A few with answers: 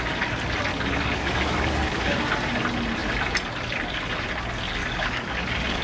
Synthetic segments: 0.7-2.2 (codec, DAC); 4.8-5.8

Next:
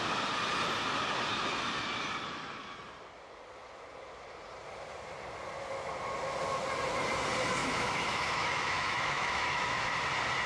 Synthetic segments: 7.6-9.8 (autoencoder, DAC-VAE)

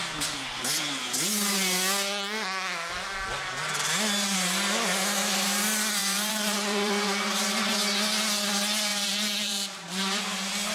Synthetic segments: 6.0-7.7 (vocoder, BigVGAN v2); 8.9-10.2

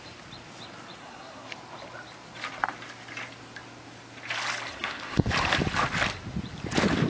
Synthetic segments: 1.0-1.5 (codec, SNAC); 4.7-5.3

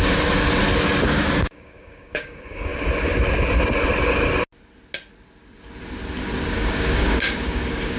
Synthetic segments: 1.0-2.7 (codec, DAC); 6.5-8.0

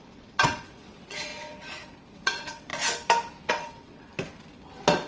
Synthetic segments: 0.0-1.3 (vocoder, WaveNeXt); 2.1-2.7; 3.5-4.1

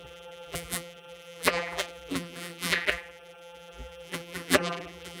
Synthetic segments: 0.0-5.2 (vocoder, BigVGAN v2)